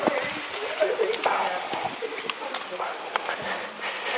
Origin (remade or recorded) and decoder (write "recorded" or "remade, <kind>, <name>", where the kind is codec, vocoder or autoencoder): recorded